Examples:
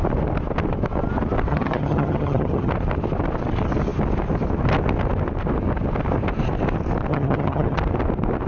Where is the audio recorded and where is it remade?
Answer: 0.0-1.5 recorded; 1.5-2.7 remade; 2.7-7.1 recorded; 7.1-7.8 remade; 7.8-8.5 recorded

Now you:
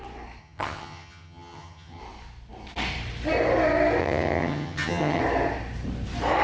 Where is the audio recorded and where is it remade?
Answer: 0.0-0.4 recorded; 0.4-2.0 remade; 2.0-4.0 recorded; 4.0-5.2 remade; 5.2-6.4 recorded

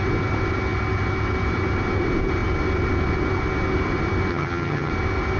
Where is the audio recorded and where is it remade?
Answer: 0.0-4.3 recorded; 4.3-4.9 remade; 4.9-5.4 recorded

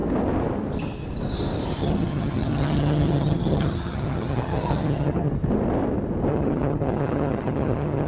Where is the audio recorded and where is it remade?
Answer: 0.0-1.8 recorded; 1.8-5.3 remade; 5.3-6.3 recorded; 6.3-8.1 remade

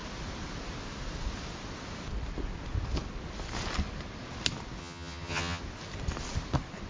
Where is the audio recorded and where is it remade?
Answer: 0.0-4.8 recorded; 4.8-5.6 remade; 5.6-6.9 recorded

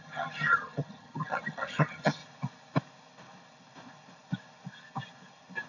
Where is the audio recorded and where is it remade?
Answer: 0.0-2.2 remade; 2.2-5.7 recorded

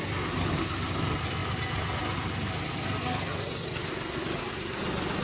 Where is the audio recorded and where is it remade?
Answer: 0.0-5.2 recorded